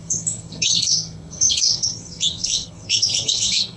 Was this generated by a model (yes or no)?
yes